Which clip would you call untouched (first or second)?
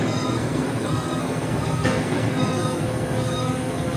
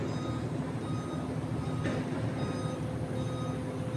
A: second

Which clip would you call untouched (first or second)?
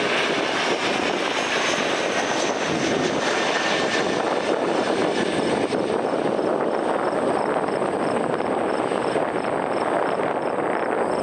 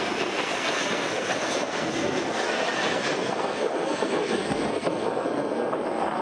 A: first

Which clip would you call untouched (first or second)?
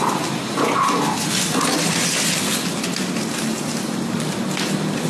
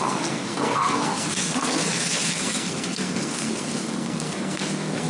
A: first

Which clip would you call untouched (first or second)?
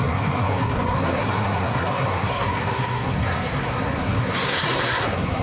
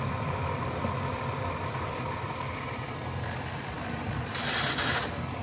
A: second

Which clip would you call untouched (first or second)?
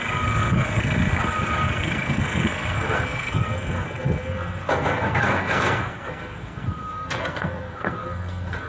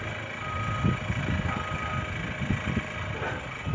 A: second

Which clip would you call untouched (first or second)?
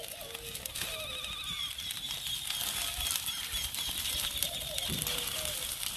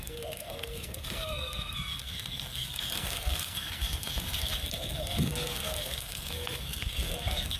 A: first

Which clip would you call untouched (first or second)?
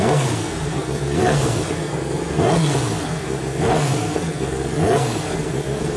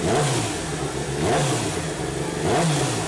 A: second